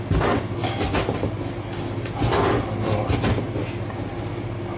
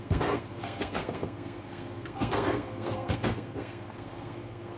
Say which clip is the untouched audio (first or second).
first